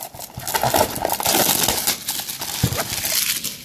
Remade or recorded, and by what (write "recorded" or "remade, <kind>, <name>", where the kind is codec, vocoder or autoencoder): recorded